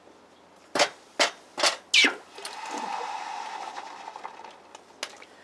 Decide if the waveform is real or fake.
real